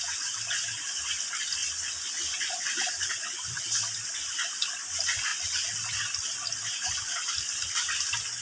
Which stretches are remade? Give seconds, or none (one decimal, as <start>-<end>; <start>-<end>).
none